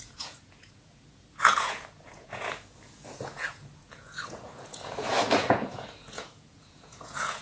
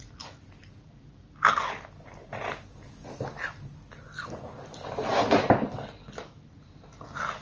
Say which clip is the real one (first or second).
second